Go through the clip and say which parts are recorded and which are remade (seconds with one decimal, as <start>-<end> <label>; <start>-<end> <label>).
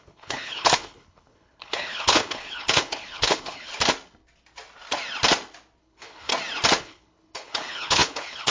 0.0-3.7 remade; 3.7-5.8 recorded; 5.8-6.3 remade; 6.3-6.8 recorded; 6.8-8.5 remade